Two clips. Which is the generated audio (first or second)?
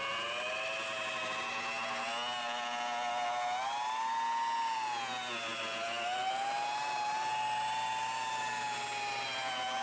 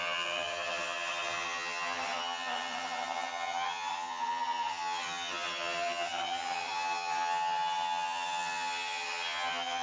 second